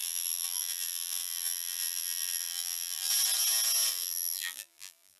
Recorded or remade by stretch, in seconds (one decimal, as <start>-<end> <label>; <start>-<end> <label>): 0.0-3.1 remade; 3.1-3.9 recorded; 3.9-5.2 remade